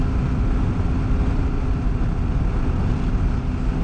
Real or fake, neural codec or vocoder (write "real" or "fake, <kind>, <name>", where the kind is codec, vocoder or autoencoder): real